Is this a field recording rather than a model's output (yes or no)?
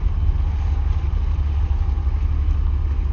yes